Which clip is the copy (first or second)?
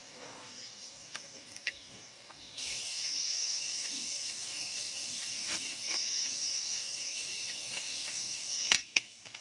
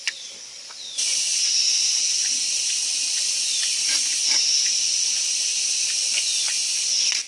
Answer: first